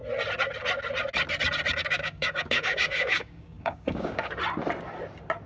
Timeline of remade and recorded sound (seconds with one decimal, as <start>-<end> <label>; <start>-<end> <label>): 0.0-1.8 recorded; 1.8-4.3 remade; 4.3-5.5 recorded